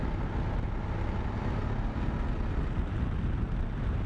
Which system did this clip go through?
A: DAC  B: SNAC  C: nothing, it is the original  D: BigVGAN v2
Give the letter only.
C